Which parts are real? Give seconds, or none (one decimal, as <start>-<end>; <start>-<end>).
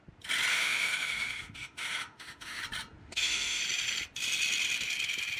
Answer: 0.0-0.5; 2.6-3.0; 3.6-5.4